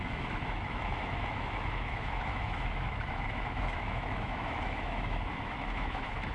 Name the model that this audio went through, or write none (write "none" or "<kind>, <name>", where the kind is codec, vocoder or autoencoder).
autoencoder, DAC-VAE